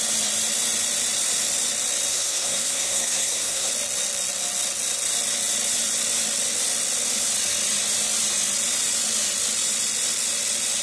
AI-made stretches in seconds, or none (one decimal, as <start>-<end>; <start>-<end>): 2.1-3.7